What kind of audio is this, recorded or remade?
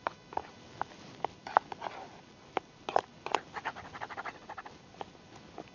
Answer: recorded